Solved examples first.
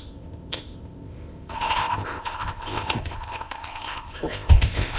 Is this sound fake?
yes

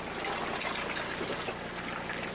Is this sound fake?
no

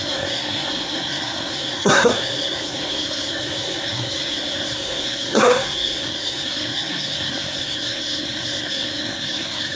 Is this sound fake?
yes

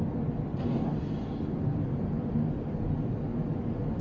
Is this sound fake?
no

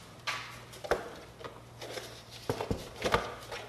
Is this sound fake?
no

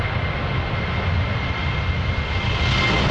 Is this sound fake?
no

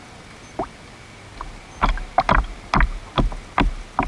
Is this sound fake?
no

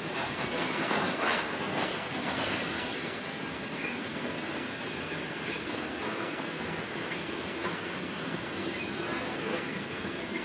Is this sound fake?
yes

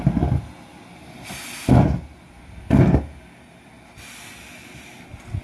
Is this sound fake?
no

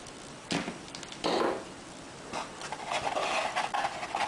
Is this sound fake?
no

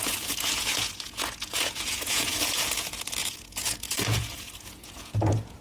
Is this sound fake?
yes